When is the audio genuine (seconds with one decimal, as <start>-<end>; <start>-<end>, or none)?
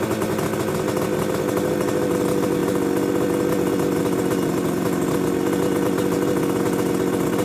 0.0-7.4